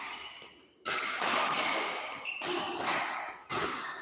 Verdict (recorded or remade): remade